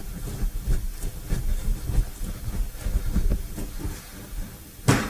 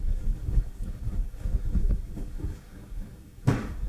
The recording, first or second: first